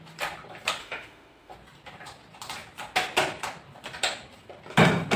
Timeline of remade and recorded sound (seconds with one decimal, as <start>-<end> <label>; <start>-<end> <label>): 0.0-0.8 recorded; 0.8-1.5 remade; 1.5-5.2 recorded